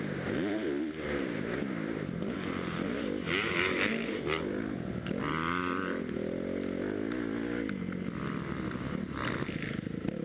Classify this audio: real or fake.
real